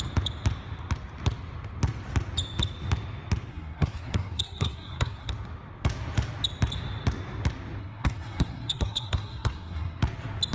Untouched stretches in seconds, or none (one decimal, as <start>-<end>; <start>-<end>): 0.0-3.5; 5.3-7.8; 10.0-10.5